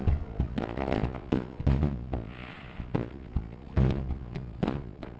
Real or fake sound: fake